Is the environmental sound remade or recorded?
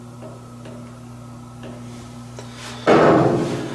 recorded